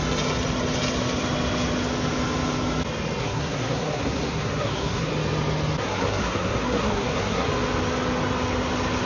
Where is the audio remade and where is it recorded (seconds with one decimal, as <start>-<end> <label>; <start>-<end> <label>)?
0.0-3.2 recorded; 3.2-5.1 remade; 5.1-5.8 recorded; 5.8-7.5 remade; 7.5-9.1 recorded